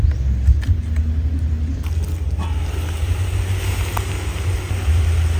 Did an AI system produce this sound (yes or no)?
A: no